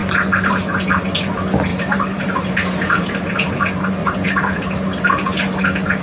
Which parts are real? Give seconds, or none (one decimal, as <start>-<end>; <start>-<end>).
0.0-1.7; 3.5-4.0; 4.6-6.0